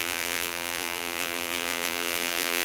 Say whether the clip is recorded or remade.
remade